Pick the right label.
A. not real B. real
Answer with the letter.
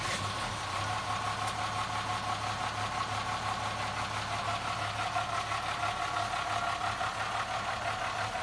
B